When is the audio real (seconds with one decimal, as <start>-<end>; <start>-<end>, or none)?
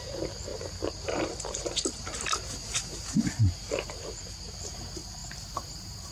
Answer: 0.0-0.5; 4.2-5.2